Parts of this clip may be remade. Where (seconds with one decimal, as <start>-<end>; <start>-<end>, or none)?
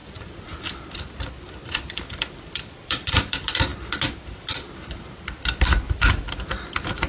0.0-3.7; 5.2-7.1